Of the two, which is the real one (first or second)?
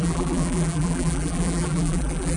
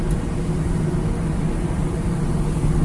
second